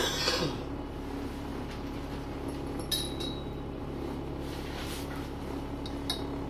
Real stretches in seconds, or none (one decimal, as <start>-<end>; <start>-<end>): 0.0-6.5